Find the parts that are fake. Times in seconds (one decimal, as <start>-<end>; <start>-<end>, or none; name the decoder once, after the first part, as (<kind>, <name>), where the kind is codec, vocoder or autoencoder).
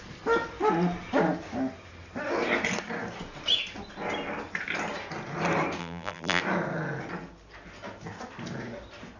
5.8-6.4 (vocoder, BigVGAN v2)